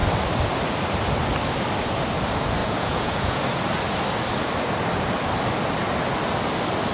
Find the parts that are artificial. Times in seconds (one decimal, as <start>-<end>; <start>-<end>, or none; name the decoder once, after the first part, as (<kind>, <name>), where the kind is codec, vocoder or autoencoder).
2.6-3.4 (vocoder, Vocos)

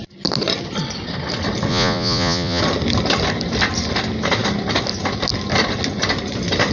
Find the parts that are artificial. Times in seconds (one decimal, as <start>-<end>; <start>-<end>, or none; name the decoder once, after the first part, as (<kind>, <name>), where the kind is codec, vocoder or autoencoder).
1.7-2.6 (vocoder, Vocos)

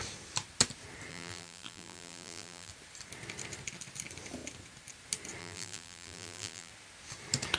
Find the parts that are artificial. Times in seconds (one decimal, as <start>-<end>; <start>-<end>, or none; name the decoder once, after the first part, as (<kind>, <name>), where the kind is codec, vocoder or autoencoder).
1.1-2.7 (vocoder, BigVGAN v2); 5.4-6.7